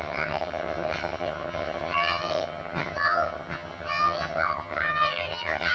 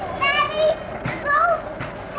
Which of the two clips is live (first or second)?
second